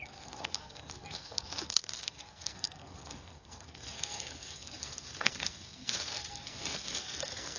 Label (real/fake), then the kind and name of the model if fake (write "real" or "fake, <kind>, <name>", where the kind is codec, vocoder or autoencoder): fake, codec, SNAC